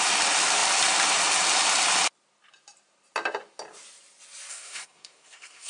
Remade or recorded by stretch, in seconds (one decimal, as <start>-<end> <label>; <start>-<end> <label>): 0.0-4.5 recorded; 4.5-5.7 remade